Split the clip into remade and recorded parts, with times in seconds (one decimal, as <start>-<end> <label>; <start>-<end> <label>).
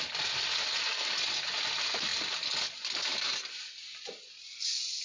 0.0-5.0 recorded